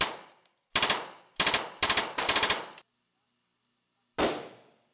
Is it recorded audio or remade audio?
recorded